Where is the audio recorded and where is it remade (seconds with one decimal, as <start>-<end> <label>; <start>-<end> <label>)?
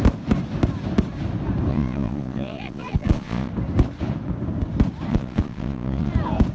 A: 0.0-1.7 recorded; 1.7-3.5 remade; 3.5-5.1 recorded; 5.1-6.1 remade; 6.1-6.5 recorded